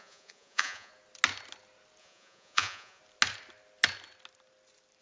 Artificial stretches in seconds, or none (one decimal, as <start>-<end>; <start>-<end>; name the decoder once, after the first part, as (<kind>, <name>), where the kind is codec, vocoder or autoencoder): 0.0-0.9 (vocoder, Vocos); 2.0-3.0